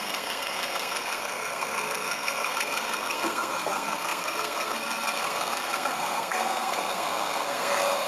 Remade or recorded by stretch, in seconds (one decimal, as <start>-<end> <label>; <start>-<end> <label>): 0.0-8.1 remade